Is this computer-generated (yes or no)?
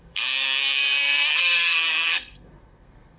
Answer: yes